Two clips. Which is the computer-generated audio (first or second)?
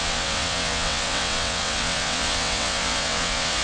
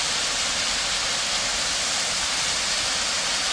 first